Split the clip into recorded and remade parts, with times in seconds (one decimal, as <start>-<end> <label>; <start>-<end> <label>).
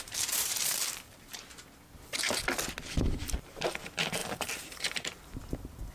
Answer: 0.0-1.3 remade; 1.3-2.9 recorded; 2.9-5.9 remade